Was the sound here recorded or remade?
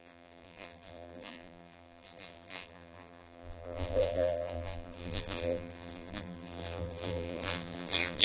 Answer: remade